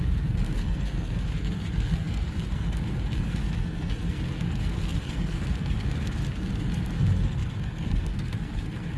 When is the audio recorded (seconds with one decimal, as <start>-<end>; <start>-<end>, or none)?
none

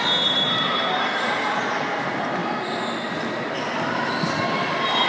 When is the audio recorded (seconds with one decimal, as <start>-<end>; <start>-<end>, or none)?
0.0-5.1

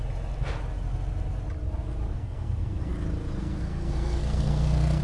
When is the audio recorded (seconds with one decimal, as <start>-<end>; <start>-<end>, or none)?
0.0-2.1; 2.9-3.4

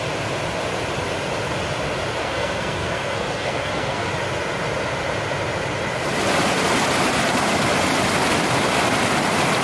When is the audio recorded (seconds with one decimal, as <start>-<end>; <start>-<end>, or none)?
0.0-2.2; 4.1-9.6

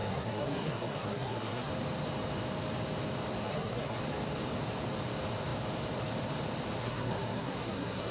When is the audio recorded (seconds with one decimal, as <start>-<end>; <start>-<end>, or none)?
1.7-3.4; 4.0-6.8

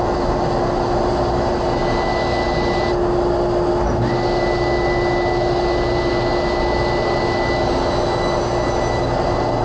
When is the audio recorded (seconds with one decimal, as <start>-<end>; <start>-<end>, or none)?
0.0-9.6

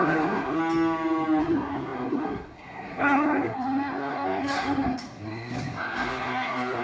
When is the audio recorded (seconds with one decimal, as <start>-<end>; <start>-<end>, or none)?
0.6-1.4